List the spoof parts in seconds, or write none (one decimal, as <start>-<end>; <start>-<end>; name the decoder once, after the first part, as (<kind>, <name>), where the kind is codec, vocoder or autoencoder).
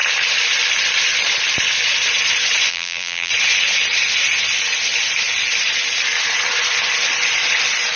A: 2.7-3.3 (vocoder, BigVGAN v2)